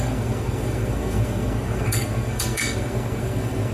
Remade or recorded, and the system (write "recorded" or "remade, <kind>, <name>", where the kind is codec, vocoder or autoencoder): remade, codec, SNAC